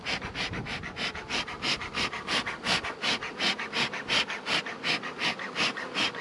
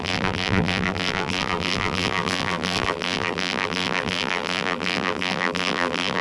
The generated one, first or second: second